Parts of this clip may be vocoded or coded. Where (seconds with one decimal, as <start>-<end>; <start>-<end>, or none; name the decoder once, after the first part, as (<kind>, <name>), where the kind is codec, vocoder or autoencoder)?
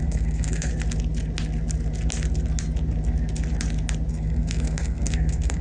0.0-0.7 (codec, SNAC); 4.1-5.6